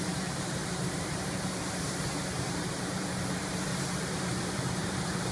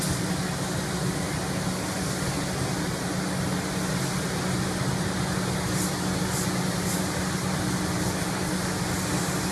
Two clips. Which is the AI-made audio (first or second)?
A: first